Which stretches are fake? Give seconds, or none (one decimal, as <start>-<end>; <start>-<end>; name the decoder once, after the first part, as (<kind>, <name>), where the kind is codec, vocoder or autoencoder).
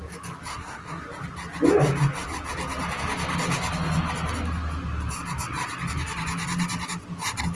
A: 0.5-1.0 (codec, SNAC)